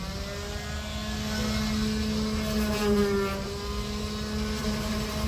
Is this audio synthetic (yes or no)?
no